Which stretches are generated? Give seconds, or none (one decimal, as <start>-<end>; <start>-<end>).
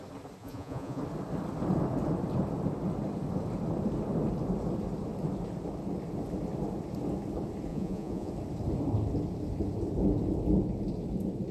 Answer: 0.4-1.0; 7.7-8.3